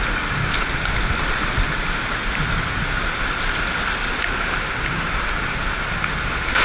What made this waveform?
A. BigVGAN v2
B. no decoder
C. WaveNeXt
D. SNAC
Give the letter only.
B